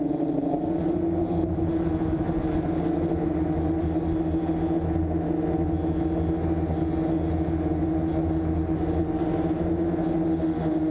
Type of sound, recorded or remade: recorded